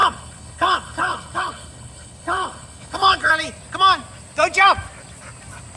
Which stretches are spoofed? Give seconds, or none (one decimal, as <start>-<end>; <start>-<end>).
0.0-3.3